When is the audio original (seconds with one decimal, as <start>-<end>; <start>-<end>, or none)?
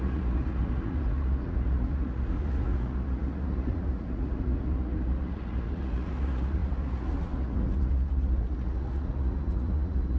none